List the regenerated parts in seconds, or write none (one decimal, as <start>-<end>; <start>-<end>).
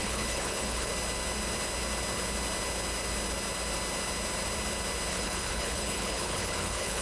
0.0-0.9; 5.1-7.0